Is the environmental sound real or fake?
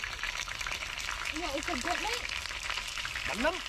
real